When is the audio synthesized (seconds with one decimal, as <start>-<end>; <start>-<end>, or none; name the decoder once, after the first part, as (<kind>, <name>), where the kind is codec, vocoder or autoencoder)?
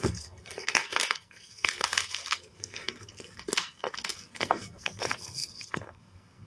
0.0-6.5 (codec, SNAC)